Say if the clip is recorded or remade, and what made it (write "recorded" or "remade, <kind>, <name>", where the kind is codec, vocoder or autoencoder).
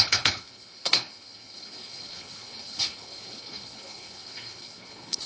remade, codec, HILCodec